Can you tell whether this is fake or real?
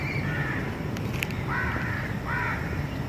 real